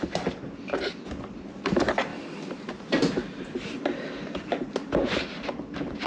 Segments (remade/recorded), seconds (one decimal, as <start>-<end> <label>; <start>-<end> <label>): 0.0-2.1 recorded; 2.1-6.1 remade